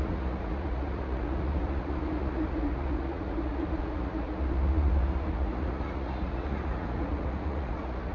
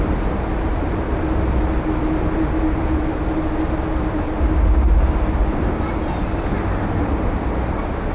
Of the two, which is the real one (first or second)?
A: second